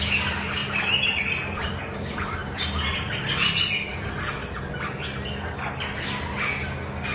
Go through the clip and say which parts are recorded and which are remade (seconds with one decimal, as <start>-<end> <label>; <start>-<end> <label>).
0.0-7.1 recorded